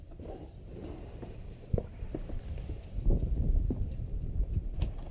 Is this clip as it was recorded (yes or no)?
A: no